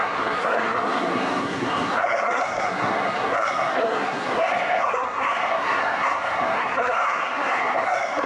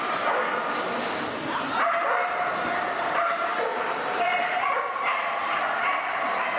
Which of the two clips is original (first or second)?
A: second